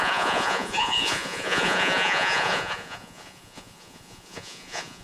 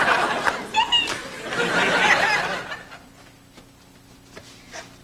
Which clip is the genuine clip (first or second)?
second